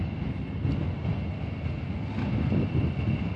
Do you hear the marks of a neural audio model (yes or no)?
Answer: no